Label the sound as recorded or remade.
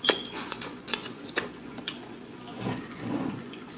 remade